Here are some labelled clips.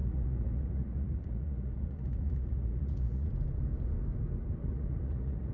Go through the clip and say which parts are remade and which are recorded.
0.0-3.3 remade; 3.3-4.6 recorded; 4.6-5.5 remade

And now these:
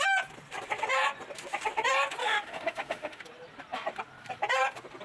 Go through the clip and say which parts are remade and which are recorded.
0.0-2.2 recorded; 2.2-3.2 remade; 3.2-5.0 recorded

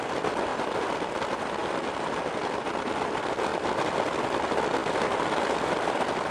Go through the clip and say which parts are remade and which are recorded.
0.0-6.3 recorded

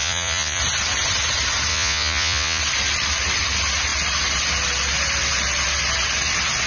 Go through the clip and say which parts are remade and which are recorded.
0.0-0.6 remade; 0.6-1.7 recorded; 1.7-2.6 remade; 2.6-6.7 recorded

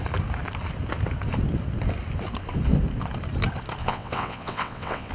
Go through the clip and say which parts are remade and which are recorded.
0.0-3.8 recorded; 3.8-5.1 remade